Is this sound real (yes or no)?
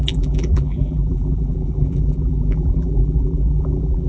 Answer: no